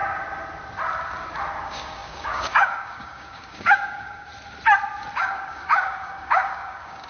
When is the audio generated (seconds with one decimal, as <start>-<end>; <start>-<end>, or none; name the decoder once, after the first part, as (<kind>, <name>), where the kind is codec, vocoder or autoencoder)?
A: 1.6-4.3 (codec, DAC); 5.1-7.1